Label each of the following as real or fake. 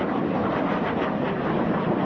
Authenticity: real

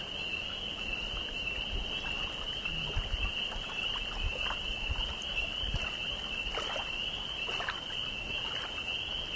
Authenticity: real